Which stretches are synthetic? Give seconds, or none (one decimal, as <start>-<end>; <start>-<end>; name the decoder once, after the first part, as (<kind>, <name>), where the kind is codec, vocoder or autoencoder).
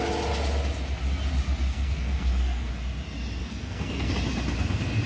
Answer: 1.7-2.7 (codec, SNAC); 3.4-4.1